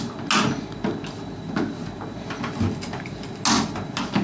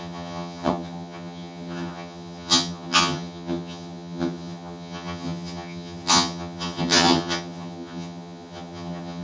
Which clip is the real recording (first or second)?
first